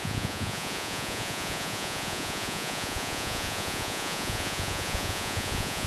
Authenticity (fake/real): fake